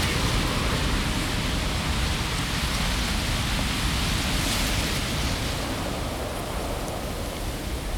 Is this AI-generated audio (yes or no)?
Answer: no